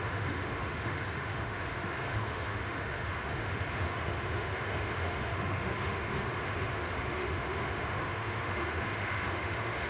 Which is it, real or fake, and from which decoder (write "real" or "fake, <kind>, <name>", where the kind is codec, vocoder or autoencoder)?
fake, autoencoder, DAC-VAE